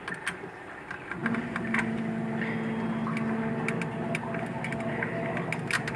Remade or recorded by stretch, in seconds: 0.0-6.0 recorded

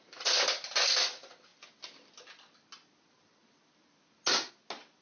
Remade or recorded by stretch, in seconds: 0.0-5.0 recorded

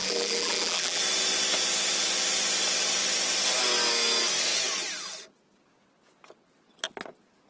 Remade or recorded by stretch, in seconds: 0.0-1.0 remade; 1.0-7.5 recorded

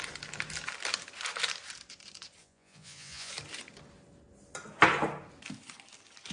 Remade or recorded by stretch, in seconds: 0.0-2.4 recorded; 2.4-3.3 remade; 3.3-6.3 recorded

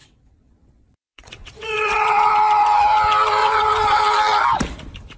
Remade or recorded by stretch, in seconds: 0.0-2.3 remade; 2.3-3.4 recorded; 3.4-4.0 remade; 4.0-5.2 recorded